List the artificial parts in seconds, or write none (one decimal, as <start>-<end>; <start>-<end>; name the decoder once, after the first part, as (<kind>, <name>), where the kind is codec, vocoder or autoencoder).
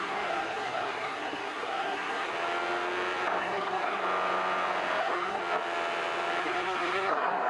0.0-2.3 (codec, SNAC); 3.4-4.0; 5.0-5.4; 6.4-7.5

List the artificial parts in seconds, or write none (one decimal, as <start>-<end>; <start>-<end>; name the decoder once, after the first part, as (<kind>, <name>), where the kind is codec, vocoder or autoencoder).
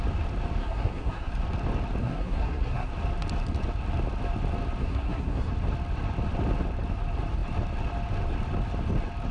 0.6-1.3 (codec, SNAC); 2.0-2.9; 4.8-5.5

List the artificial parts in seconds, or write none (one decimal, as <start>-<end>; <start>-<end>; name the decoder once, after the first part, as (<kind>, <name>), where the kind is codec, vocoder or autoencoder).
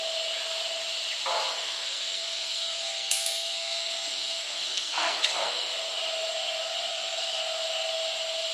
1.5-5.7 (codec, SNAC); 6.9-7.4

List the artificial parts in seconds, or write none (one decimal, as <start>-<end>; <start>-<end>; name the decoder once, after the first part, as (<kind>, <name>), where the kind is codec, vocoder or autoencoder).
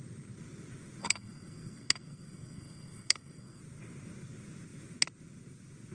1.0-3.6 (codec, SNAC)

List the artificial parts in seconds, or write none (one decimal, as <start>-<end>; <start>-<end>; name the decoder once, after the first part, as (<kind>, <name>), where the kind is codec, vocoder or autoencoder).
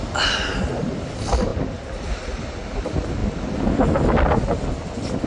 none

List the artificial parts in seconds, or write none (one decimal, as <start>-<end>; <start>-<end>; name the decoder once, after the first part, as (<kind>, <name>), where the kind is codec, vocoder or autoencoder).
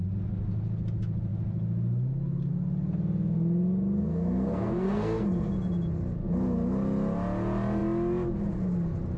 4.0-5.5 (codec, SNAC)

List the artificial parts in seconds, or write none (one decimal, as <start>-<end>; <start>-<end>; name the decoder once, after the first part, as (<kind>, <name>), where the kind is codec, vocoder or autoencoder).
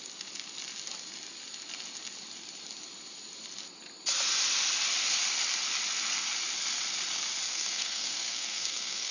7.5-9.1 (codec, SNAC)